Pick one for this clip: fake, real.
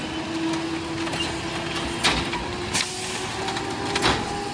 real